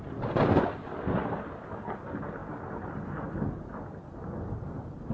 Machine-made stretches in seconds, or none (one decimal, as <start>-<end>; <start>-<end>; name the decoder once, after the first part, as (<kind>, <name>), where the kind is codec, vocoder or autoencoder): none